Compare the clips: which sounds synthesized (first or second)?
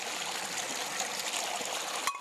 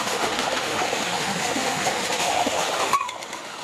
second